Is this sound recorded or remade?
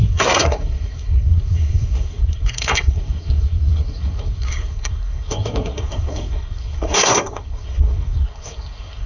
remade